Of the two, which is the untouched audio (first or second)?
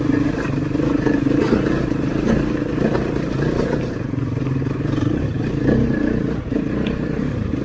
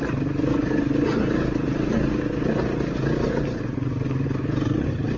second